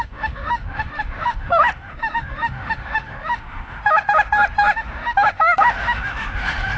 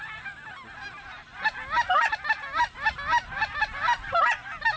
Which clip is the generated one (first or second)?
first